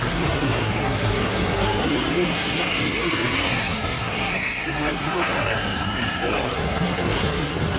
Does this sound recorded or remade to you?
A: remade